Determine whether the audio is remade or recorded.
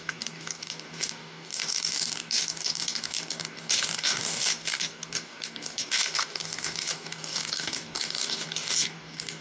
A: remade